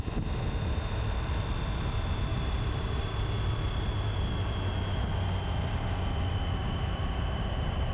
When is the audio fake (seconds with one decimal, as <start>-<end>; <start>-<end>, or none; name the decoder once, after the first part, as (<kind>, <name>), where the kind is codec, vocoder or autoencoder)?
2.3-4.2 (vocoder, BigVGAN v2); 6.6-7.9